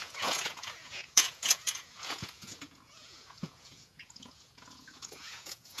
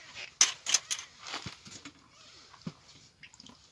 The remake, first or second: first